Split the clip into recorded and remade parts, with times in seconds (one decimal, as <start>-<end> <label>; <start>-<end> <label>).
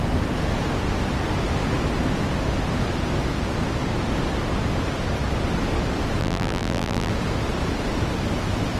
0.0-6.2 recorded; 6.2-7.1 remade; 7.1-8.8 recorded